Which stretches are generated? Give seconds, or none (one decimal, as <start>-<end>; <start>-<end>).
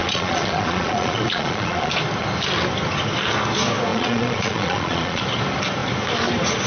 0.0-1.9; 3.9-5.2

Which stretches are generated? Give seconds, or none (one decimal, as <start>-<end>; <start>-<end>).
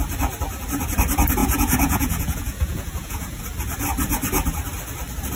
1.4-3.4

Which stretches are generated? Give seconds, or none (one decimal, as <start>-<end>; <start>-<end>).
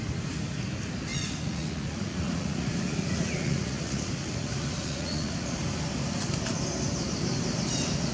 1.1-5.6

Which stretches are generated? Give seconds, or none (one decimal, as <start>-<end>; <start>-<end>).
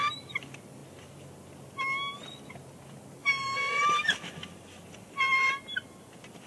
none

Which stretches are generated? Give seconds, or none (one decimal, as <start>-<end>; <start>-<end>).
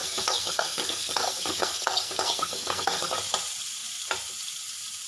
0.0-3.1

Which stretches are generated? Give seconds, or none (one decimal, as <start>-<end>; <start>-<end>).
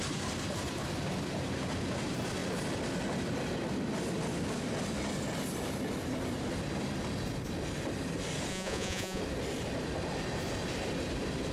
8.5-9.2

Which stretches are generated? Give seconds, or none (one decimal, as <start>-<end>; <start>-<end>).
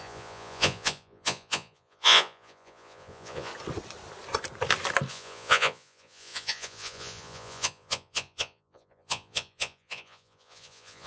0.0-3.5; 5.1-11.1